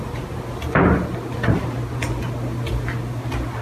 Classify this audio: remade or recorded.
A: recorded